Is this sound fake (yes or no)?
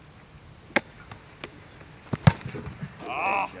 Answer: no